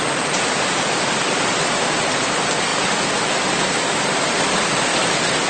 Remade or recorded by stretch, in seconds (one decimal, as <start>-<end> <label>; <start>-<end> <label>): 0.0-1.6 remade; 1.6-2.2 recorded; 2.2-5.5 remade

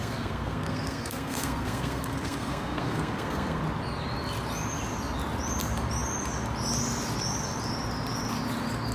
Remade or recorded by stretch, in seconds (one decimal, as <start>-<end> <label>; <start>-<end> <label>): 0.0-3.6 remade; 3.6-8.9 recorded

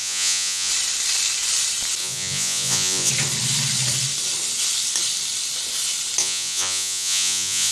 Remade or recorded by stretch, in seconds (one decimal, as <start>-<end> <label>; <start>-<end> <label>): 0.0-0.7 remade; 0.7-2.0 recorded; 2.0-3.1 remade; 3.1-6.2 recorded; 6.2-7.7 remade

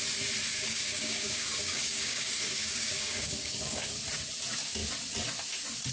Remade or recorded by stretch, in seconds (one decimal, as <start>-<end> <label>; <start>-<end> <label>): 0.0-0.5 recorded; 0.5-4.0 remade; 4.0-5.9 recorded

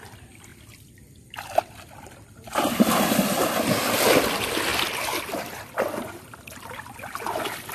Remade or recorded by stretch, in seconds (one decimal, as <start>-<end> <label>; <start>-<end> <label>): 0.0-0.5 recorded; 0.5-3.5 remade; 3.5-4.7 recorded; 4.7-5.9 remade; 5.9-7.7 recorded

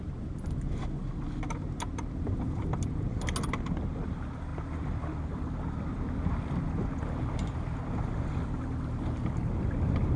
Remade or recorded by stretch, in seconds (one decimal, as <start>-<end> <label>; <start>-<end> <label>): 0.0-10.2 recorded

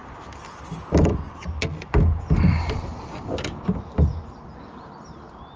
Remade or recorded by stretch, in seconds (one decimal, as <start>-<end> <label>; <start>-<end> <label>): 0.0-2.5 recorded; 2.5-2.9 remade; 2.9-4.6 recorded; 4.6-5.6 remade

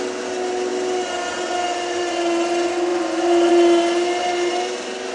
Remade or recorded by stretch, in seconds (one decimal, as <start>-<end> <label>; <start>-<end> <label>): 0.0-5.1 recorded